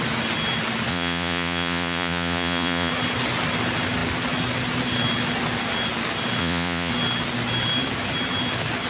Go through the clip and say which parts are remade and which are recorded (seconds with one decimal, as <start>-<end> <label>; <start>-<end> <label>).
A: 0.0-0.9 recorded; 0.9-2.9 remade; 2.9-6.4 recorded; 6.4-6.9 remade; 6.9-8.9 recorded